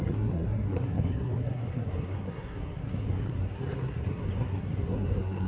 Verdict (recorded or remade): remade